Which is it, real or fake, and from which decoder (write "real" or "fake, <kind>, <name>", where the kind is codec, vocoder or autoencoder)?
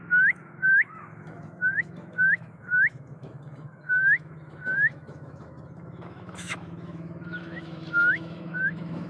fake, autoencoder, DAC-VAE